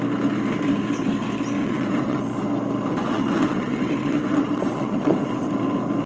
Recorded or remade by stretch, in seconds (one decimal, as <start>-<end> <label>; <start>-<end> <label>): 0.0-1.6 recorded; 1.6-2.2 remade; 2.2-2.9 recorded; 2.9-5.5 remade; 5.5-6.1 recorded